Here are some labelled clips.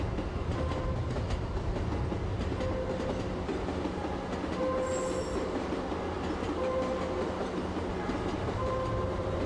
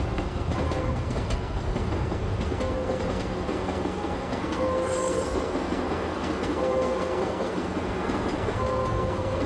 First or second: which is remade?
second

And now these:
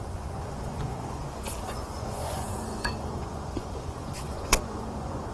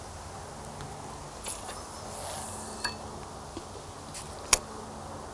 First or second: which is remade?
first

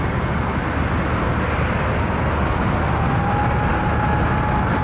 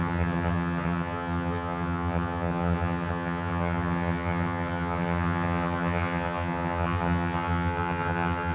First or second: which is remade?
second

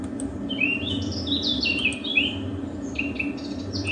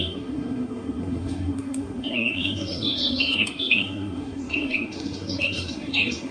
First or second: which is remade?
second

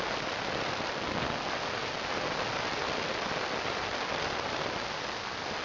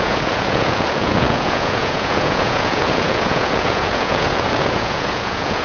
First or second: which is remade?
second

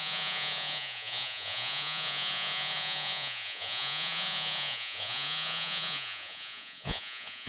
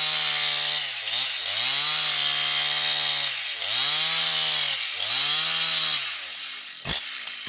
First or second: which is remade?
first